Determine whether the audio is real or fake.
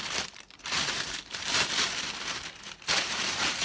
fake